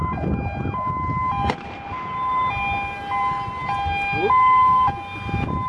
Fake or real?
real